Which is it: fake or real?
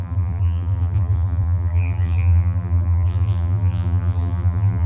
fake